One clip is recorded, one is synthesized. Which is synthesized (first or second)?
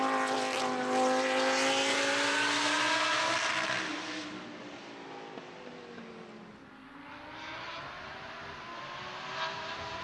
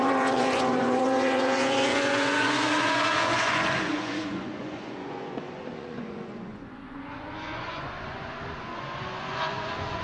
second